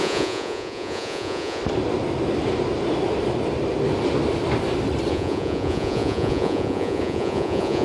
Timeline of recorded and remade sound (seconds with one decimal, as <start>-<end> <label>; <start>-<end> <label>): 0.0-1.6 remade; 1.6-5.1 recorded; 5.1-7.8 remade